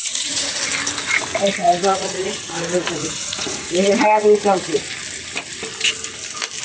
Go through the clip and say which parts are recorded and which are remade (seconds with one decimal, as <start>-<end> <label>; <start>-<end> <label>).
0.0-0.6 remade; 0.6-1.6 recorded; 1.6-4.8 remade; 4.8-6.6 recorded

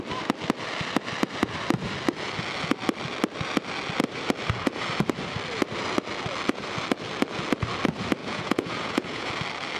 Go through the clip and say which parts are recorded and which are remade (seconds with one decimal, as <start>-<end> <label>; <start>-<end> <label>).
0.0-8.2 recorded; 8.2-9.3 remade; 9.3-9.8 recorded

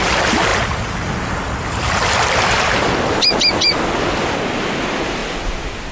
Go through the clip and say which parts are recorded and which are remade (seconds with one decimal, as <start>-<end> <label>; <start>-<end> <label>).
0.0-5.9 recorded

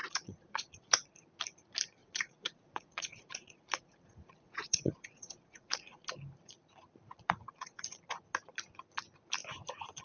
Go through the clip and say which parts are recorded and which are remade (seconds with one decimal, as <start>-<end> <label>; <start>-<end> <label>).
0.0-1.1 remade; 1.1-2.0 recorded; 2.0-6.0 remade; 6.0-7.1 recorded; 7.1-7.8 remade; 7.8-10.0 recorded

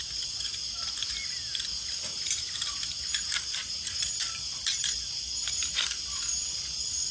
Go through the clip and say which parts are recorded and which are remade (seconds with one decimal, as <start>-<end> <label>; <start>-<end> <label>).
0.0-7.1 recorded